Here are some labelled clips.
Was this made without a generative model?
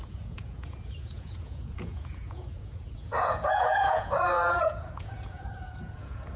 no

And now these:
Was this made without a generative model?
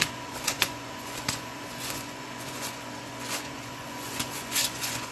no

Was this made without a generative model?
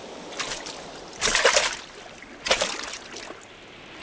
yes